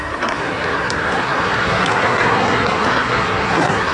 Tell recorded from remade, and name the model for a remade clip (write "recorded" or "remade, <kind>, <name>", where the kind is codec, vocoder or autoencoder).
remade, codec, SNAC